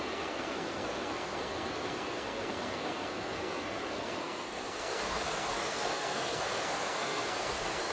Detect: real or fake fake